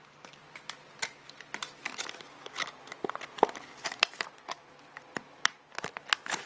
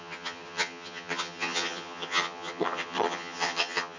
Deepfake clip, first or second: second